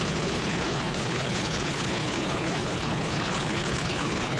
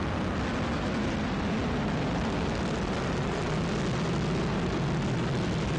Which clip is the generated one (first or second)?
first